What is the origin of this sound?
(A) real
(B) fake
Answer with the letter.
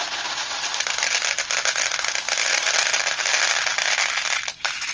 A